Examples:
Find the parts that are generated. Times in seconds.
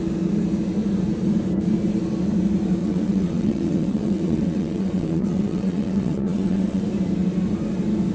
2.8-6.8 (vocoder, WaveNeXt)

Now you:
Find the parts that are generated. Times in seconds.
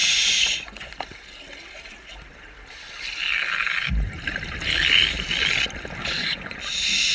0.0-0.9 (vocoder, Vocos); 6.0-6.6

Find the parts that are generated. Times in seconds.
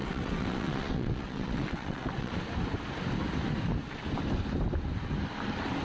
0.0-2.3 (vocoder, WaveNeXt)